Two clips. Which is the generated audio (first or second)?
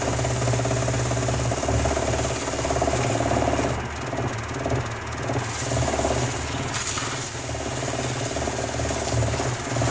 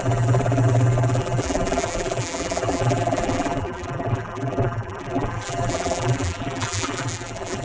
second